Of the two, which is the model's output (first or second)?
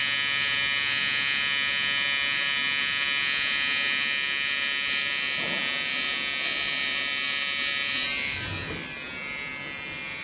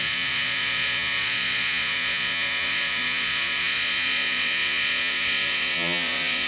second